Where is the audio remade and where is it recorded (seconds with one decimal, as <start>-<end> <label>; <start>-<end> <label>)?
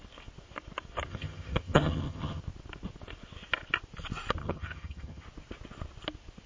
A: 0.0-1.1 recorded; 1.1-2.4 remade; 2.4-4.4 recorded; 4.4-5.2 remade; 5.2-6.5 recorded